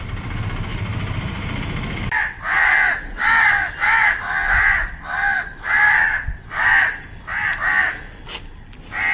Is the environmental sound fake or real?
real